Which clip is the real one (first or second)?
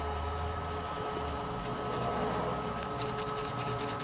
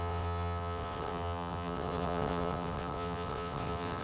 first